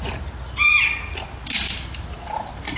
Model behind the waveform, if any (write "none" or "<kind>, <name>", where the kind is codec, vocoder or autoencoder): none